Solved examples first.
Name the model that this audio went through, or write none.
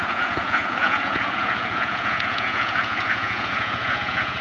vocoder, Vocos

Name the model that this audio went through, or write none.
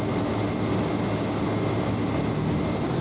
none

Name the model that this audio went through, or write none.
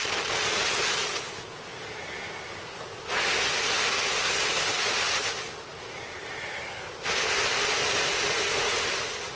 none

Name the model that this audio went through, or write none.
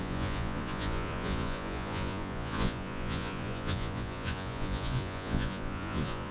vocoder, Vocos